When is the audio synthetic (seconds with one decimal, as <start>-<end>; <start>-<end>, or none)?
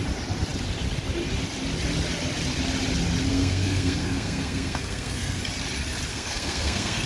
3.3-5.4; 6.1-7.1